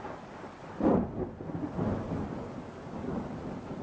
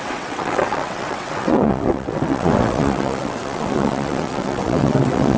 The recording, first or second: first